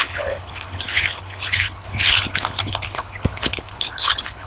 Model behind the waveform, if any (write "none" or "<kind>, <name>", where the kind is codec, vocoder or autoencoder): codec, HILCodec